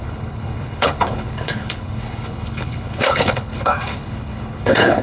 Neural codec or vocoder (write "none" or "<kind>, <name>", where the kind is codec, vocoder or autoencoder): codec, HILCodec